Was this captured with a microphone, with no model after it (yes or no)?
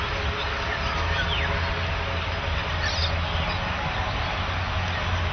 yes